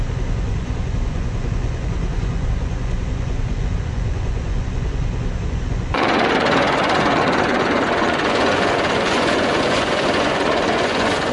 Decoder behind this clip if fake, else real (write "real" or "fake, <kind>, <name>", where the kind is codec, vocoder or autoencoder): fake, vocoder, Vocos